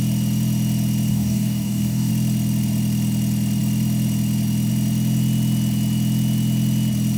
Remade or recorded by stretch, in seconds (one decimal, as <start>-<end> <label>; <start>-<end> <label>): 0.0-1.1 recorded; 1.1-2.1 remade; 2.1-7.2 recorded